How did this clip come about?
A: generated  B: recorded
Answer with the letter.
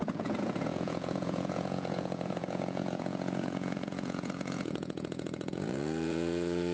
A